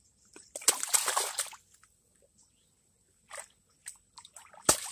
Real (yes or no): yes